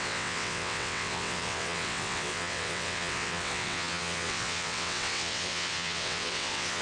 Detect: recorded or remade remade